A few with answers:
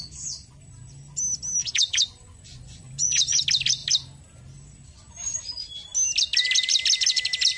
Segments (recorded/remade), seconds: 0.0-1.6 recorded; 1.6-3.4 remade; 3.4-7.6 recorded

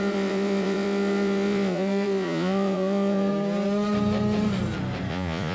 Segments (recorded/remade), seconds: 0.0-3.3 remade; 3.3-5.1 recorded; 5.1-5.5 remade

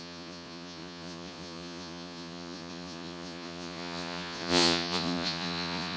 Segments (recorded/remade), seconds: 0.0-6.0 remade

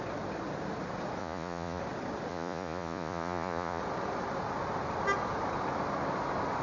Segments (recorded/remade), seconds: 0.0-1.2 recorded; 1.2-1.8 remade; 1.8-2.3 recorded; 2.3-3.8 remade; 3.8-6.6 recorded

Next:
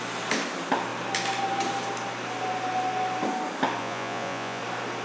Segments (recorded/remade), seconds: 0.0-3.8 recorded; 3.8-4.6 remade; 4.6-5.0 recorded

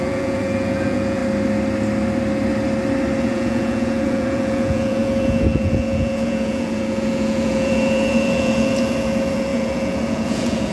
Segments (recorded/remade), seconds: 0.0-1.2 remade; 1.2-3.2 recorded; 3.2-10.7 remade